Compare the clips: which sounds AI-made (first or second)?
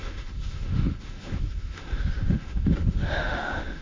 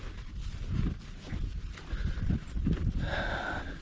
first